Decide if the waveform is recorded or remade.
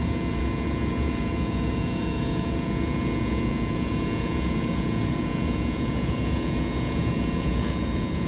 remade